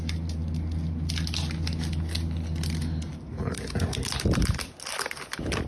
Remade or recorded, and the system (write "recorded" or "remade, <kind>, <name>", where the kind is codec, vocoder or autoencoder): recorded